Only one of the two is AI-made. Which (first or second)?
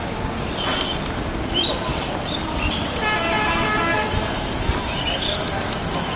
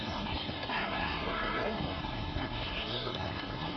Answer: second